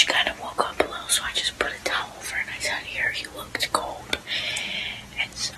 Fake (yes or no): no